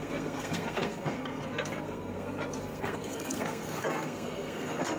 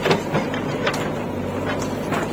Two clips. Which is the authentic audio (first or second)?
second